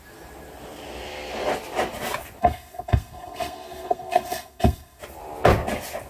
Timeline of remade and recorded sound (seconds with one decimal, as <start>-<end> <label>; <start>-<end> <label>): 0.0-2.4 recorded; 2.4-5.0 remade; 5.0-6.1 recorded